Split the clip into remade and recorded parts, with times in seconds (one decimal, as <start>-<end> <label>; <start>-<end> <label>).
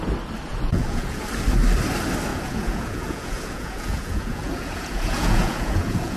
0.0-0.5 recorded; 0.5-1.2 remade; 1.2-2.3 recorded; 2.3-6.2 remade